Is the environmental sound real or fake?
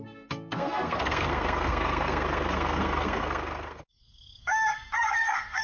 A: fake